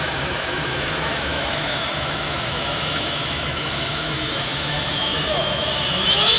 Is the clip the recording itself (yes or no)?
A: no